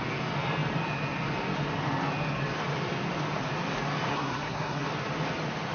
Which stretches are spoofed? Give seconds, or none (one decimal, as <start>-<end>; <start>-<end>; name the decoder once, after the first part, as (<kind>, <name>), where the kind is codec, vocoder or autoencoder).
4.1-4.9 (codec, SNAC)